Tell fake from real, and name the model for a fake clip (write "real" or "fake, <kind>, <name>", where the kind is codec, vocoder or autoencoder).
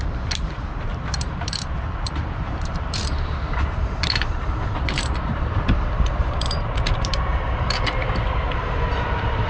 fake, vocoder, BigVGAN v2